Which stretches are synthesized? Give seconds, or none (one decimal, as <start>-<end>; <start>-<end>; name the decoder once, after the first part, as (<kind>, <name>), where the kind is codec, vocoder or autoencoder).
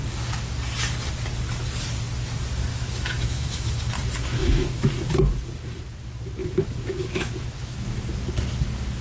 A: 2.7-3.9 (autoencoder, DAC-VAE); 4.4-4.9; 6.4-8.0